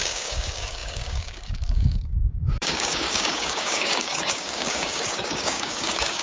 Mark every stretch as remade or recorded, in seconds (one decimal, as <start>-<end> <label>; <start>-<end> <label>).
0.0-6.2 remade